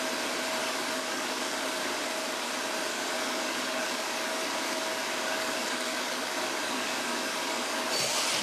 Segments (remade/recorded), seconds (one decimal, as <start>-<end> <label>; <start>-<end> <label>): 0.0-0.6 recorded; 0.6-2.5 remade; 2.5-2.9 recorded; 2.9-7.9 remade; 7.9-8.4 recorded